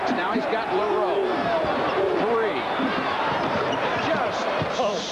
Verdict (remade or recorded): remade